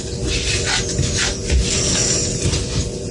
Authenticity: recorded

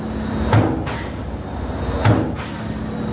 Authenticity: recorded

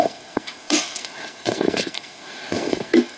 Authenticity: remade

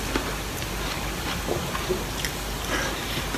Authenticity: recorded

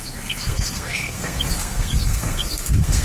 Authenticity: remade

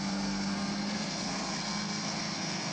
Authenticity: remade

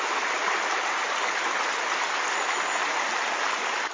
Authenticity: recorded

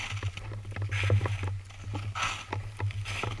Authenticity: recorded